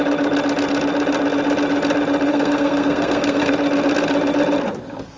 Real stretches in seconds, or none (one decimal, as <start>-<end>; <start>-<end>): 0.0-2.3; 3.5-5.2